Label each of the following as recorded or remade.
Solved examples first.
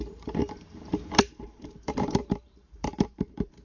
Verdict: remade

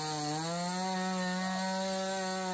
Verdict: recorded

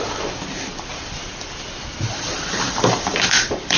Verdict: remade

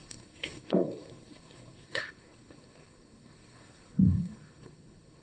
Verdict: remade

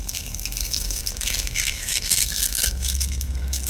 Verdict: remade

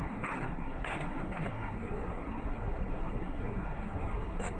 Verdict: remade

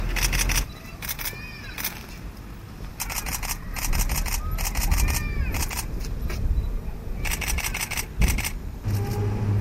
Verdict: recorded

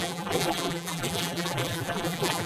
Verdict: remade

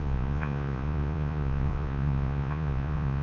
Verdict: remade